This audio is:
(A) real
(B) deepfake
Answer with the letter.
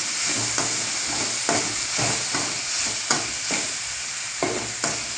A